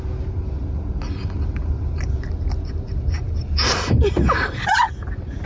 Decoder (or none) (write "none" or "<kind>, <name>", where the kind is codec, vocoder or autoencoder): none